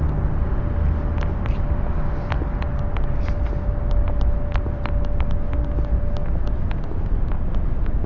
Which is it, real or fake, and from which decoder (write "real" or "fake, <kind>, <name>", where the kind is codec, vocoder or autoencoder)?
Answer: real